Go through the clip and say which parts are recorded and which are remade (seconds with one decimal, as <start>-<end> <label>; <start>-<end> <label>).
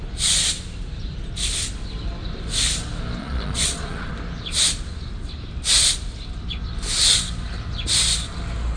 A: 0.0-3.2 recorded; 3.2-4.1 remade; 4.1-8.8 recorded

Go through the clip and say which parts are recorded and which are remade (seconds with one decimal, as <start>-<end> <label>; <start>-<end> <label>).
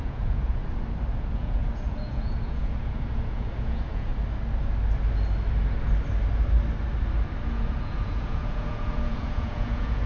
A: 0.0-0.6 remade; 0.6-1.2 recorded; 1.2-4.1 remade; 4.1-7.5 recorded; 7.5-10.1 remade